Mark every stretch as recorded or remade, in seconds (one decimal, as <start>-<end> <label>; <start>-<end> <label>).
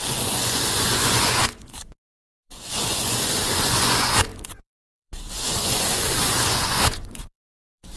0.0-8.0 remade